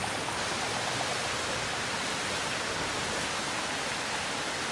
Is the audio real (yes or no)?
yes